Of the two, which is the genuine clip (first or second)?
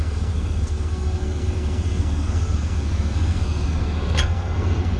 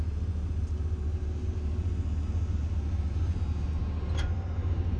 second